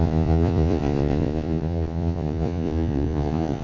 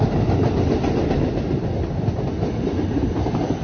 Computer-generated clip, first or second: first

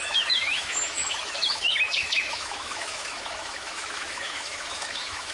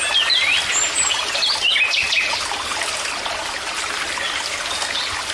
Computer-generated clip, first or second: first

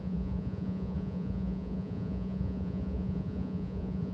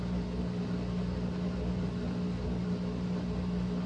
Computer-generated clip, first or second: first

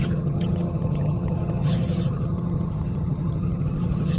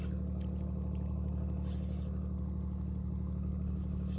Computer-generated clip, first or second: first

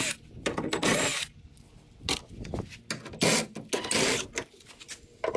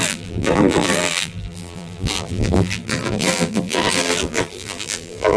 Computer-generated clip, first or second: second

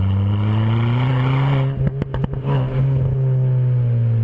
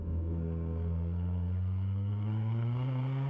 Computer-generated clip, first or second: second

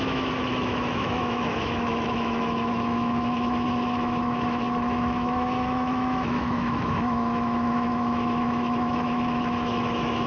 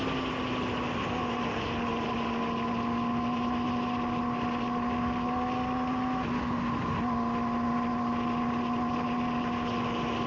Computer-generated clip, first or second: first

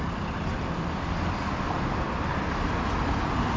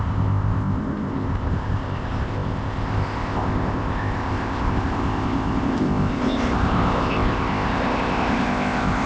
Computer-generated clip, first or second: second